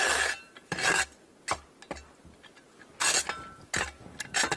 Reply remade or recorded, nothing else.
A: recorded